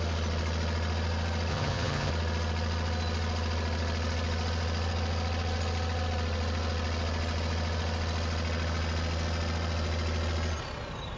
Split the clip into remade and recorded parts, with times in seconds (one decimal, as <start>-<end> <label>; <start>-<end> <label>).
0.0-1.5 recorded; 1.5-2.1 remade; 2.1-11.2 recorded